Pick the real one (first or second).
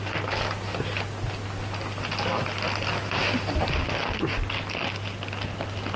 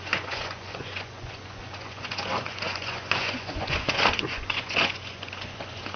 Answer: first